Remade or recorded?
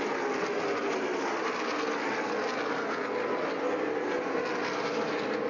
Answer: recorded